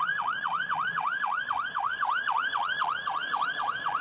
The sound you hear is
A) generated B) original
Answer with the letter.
A